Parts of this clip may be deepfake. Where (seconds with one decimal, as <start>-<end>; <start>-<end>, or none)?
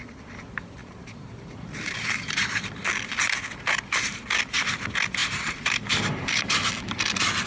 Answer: 0.8-2.5; 5.2-6.7